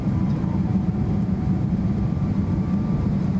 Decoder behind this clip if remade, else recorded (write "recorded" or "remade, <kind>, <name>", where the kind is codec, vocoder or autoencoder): remade, vocoder, BigVGAN v2